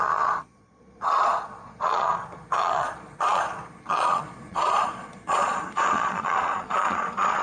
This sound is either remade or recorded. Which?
remade